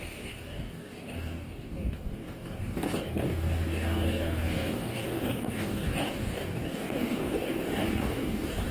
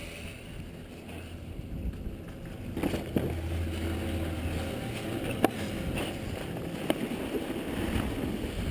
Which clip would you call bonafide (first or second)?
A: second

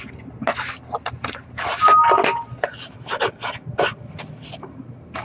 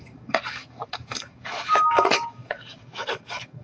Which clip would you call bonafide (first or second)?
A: first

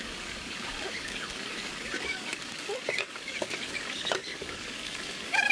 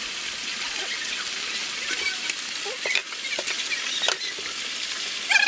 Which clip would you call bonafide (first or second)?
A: second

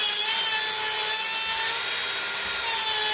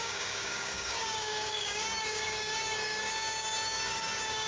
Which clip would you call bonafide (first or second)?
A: first